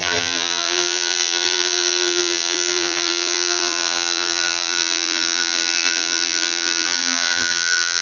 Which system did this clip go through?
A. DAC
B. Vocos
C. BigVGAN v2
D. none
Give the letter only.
C